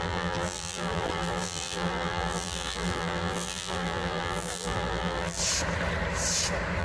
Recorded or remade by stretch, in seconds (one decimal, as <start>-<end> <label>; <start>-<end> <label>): 0.0-5.4 remade; 5.4-6.8 recorded